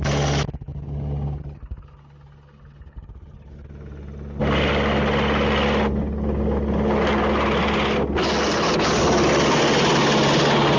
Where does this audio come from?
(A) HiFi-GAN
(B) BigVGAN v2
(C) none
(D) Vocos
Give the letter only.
C